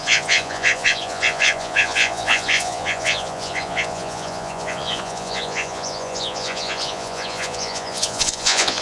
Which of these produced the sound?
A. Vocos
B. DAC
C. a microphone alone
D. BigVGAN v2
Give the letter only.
A